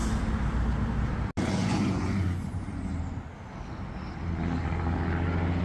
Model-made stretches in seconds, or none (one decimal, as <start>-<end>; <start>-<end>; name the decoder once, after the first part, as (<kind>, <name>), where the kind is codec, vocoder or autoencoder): 1.4-2.9 (vocoder, Vocos)